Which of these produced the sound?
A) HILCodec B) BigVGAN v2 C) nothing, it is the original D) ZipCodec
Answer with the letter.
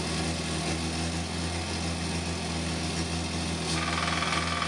C